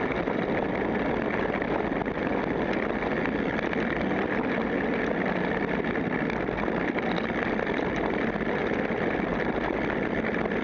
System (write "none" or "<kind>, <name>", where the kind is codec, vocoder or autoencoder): none